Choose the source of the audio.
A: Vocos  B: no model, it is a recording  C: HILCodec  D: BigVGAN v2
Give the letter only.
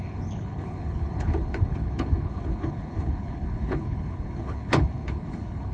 C